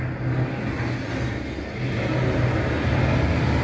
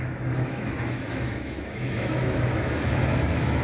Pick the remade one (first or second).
second